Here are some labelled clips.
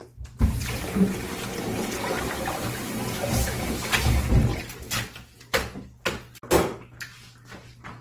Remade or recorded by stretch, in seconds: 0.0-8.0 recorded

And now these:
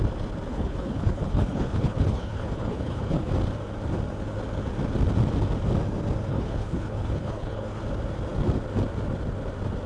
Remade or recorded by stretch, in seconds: 0.0-0.5 recorded; 0.5-3.3 remade; 3.3-6.3 recorded; 6.3-7.8 remade; 7.8-9.9 recorded

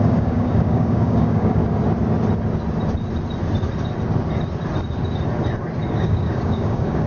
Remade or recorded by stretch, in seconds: 0.0-1.6 remade; 1.6-5.9 recorded; 5.9-7.1 remade

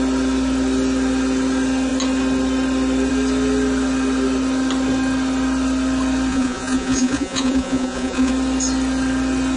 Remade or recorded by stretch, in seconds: 0.0-6.3 recorded; 6.3-8.3 remade; 8.3-9.6 recorded

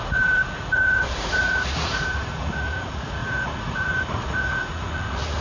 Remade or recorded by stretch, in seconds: 0.0-5.4 remade

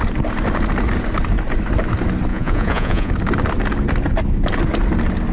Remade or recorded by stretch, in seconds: 0.0-2.3 recorded; 2.3-3.1 remade; 3.1-5.3 recorded